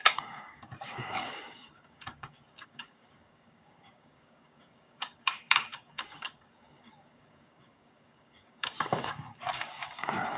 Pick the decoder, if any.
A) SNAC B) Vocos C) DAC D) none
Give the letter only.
C